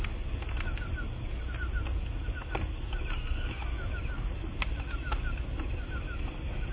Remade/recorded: recorded